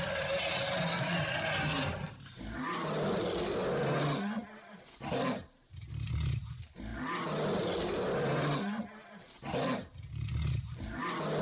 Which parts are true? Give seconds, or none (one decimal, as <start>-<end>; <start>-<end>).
0.0-11.4